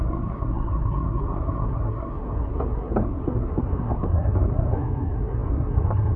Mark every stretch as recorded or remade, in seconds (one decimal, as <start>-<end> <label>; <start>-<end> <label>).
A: 0.0-6.2 remade

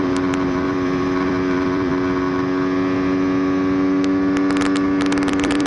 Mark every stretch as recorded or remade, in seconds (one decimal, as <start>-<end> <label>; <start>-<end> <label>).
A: 0.0-1.9 remade; 1.9-5.3 recorded; 5.3-5.7 remade